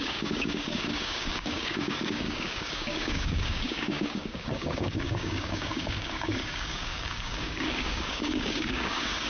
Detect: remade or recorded remade